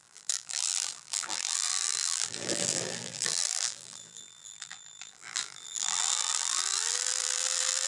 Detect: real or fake fake